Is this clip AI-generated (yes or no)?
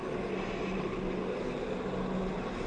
no